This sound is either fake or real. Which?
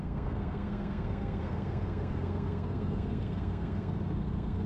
fake